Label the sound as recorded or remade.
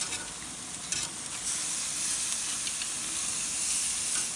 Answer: recorded